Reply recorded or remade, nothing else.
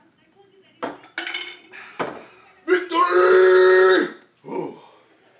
recorded